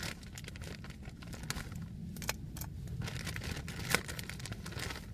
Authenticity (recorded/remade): recorded